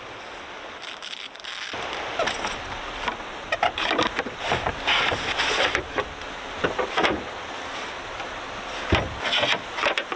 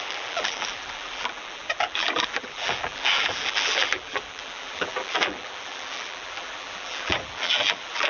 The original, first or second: first